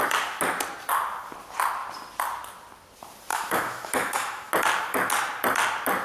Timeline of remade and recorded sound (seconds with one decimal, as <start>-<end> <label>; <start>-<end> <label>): 0.0-3.3 recorded; 3.3-4.5 remade; 4.5-6.0 recorded